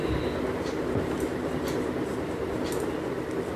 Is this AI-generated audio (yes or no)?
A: no